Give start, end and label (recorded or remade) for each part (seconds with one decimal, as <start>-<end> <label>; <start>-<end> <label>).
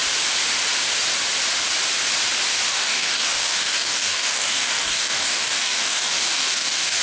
0.0-2.7 recorded; 2.7-7.0 remade